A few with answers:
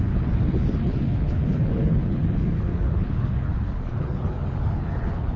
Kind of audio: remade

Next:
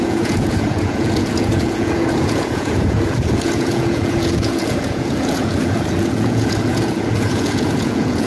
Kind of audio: remade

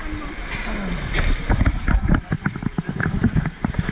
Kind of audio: recorded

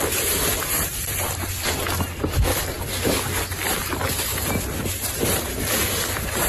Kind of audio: remade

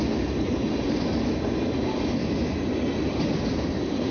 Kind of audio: recorded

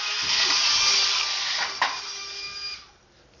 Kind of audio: recorded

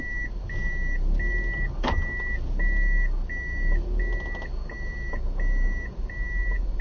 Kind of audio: recorded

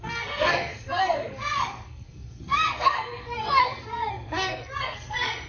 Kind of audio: remade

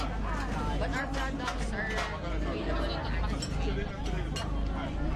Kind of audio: recorded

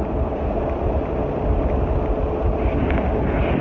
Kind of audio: recorded